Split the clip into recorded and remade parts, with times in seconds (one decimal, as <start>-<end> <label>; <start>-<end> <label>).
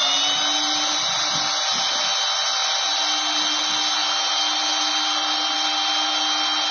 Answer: 0.0-6.7 recorded